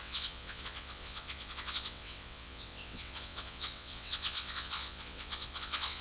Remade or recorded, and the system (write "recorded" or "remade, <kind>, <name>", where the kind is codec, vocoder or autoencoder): remade, vocoder, WaveNeXt